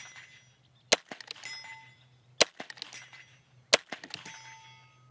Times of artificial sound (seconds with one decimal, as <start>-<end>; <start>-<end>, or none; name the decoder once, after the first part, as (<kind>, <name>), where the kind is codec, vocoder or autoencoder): none